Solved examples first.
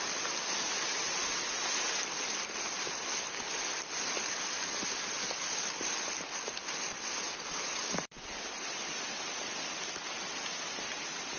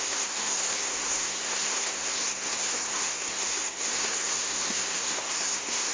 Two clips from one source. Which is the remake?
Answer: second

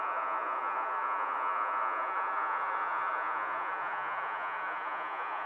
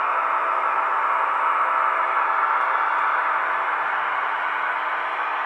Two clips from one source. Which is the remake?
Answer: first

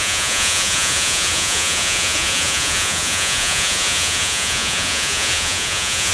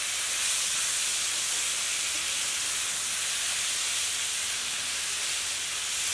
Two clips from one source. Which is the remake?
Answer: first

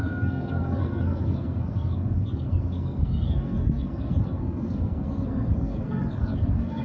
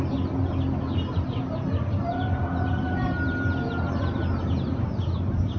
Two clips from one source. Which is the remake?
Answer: first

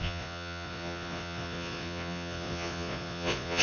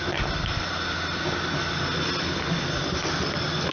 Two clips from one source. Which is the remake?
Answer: first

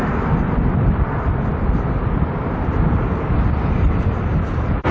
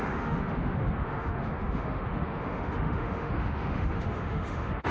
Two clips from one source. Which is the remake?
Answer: second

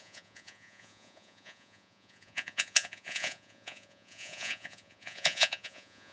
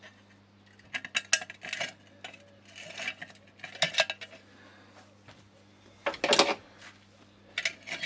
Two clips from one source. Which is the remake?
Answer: first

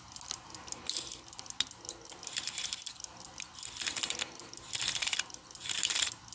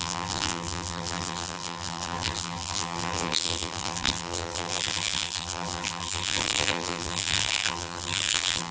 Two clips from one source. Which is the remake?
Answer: second